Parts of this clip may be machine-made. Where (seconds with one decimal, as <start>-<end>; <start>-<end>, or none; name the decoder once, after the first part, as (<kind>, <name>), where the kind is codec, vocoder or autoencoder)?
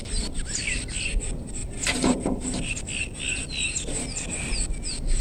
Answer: 1.6-2.8 (vocoder, BigVGAN v2)